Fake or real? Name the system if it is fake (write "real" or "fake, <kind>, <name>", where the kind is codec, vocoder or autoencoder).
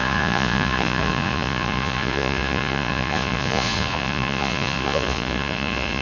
fake, vocoder, Vocos